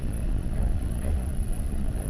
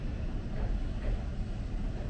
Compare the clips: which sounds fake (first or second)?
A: first